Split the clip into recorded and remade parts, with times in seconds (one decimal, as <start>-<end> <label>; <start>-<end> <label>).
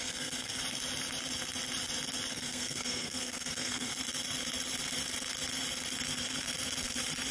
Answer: 0.0-0.6 remade; 0.6-2.3 recorded; 2.3-3.9 remade; 3.9-7.3 recorded